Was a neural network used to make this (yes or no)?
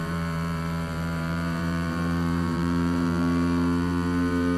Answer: yes